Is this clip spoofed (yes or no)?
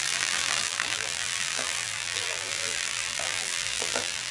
yes